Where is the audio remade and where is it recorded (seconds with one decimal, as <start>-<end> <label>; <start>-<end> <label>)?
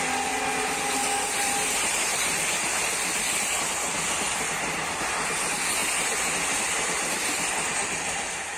0.0-8.6 recorded